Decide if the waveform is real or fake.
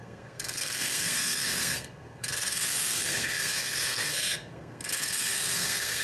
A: fake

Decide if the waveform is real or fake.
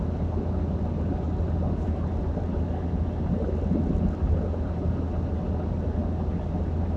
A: real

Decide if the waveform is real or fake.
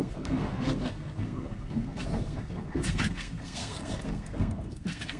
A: fake